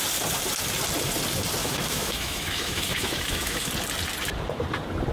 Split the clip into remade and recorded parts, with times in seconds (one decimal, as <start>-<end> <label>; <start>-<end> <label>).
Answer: 0.0-1.6 recorded; 1.6-3.7 remade; 3.7-5.1 recorded